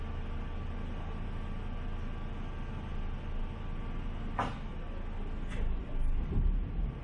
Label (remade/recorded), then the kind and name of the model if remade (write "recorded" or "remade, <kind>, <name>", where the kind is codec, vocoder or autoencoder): recorded